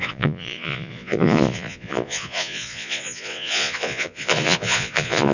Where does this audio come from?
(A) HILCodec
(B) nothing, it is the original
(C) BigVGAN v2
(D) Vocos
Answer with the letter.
D